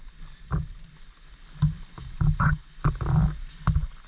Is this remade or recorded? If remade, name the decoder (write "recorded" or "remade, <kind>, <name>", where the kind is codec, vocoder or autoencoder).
recorded